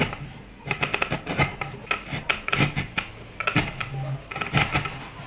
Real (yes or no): yes